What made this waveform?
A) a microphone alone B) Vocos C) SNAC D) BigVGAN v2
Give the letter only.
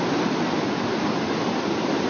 A